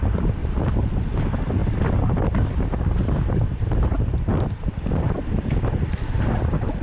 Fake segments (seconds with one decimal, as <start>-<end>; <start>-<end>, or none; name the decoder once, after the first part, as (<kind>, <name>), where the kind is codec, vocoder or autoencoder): 0.0-0.4 (vocoder, BigVGAN v2); 1.2-6.8